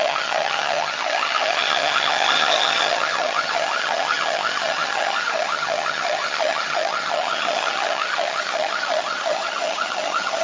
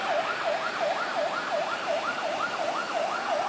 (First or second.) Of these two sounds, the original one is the second